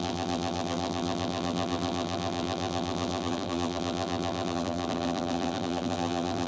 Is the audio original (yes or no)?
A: no